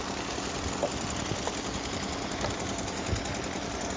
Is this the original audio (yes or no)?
yes